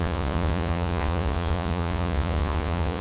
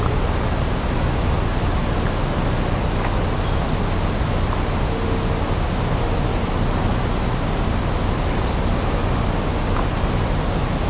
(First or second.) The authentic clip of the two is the second